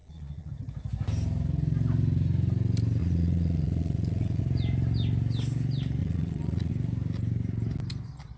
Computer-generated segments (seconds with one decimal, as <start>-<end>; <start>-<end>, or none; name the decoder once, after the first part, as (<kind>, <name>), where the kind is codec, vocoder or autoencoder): 0.0-0.5 (vocoder, Vocos); 3.0-4.4; 6.0-6.7